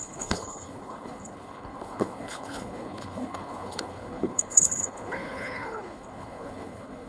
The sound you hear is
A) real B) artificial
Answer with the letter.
B